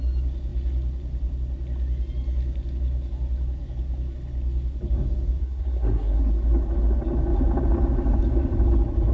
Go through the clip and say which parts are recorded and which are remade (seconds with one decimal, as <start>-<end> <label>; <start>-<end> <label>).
0.0-5.4 recorded; 5.4-6.2 remade; 6.2-9.1 recorded